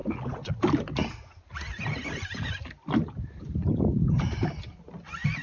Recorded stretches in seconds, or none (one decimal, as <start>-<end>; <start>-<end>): 0.0-5.4